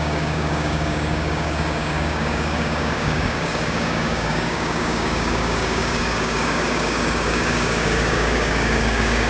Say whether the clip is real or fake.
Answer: fake